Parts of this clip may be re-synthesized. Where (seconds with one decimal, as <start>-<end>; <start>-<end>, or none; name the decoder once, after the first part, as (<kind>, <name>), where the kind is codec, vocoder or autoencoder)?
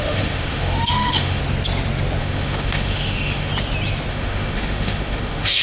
0.0-1.4 (autoencoder, DAC-VAE); 2.2-3.5; 4.1-5.6